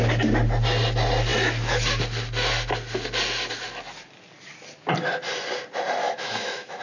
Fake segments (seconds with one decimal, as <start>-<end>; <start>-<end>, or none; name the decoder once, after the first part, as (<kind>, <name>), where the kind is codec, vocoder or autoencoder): 6.0-6.8 (autoencoder, DAC-VAE)

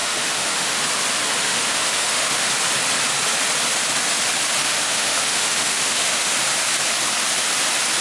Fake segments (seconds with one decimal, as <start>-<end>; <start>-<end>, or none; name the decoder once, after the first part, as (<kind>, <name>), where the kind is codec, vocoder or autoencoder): 0.0-0.8 (autoencoder, DAC-VAE); 1.4-2.4; 4.6-6.3